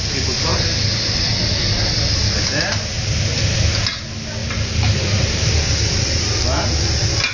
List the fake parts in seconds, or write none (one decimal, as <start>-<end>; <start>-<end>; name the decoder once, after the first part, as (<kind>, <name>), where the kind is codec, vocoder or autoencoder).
0.5-1.1 (vocoder, BigVGAN v2); 4.4-6.3